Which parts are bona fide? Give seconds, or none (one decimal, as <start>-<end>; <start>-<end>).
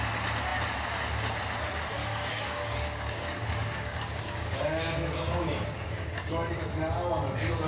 0.0-2.0; 6.6-7.7